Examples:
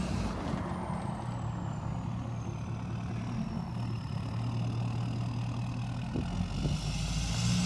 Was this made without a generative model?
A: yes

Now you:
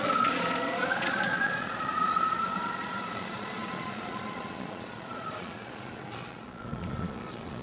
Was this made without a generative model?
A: no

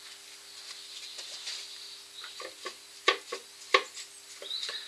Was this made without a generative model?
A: yes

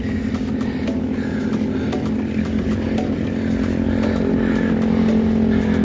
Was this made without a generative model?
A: yes